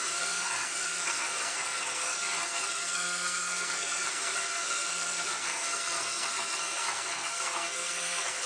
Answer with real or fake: fake